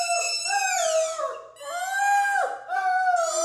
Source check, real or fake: real